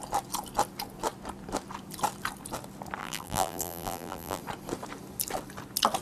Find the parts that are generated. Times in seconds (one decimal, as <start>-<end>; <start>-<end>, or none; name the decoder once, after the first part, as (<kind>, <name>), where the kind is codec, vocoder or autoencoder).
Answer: 3.0-4.4 (vocoder, BigVGAN v2)